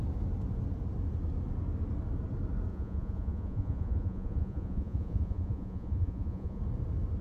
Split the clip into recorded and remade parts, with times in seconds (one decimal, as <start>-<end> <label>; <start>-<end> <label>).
0.0-2.7 recorded; 2.7-6.6 remade; 6.6-7.2 recorded